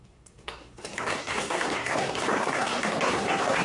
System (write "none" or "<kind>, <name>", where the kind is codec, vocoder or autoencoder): codec, SNAC